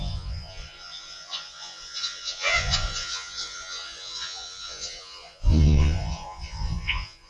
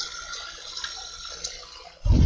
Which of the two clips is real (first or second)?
second